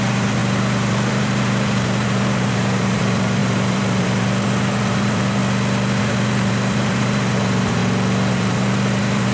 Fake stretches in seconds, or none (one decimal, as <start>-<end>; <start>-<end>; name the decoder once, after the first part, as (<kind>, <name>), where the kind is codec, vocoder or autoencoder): 0.0-5.4 (vocoder, BigVGAN v2); 6.0-7.8; 8.3-9.3